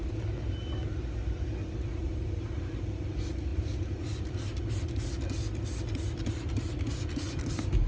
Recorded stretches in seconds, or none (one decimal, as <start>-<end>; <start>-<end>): 0.0-7.9